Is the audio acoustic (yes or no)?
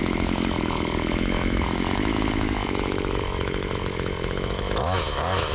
no